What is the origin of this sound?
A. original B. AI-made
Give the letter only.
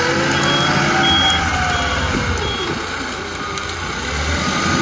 A